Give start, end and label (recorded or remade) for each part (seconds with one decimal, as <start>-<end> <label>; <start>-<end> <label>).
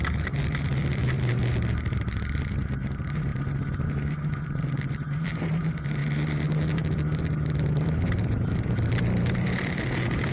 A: 0.0-10.3 remade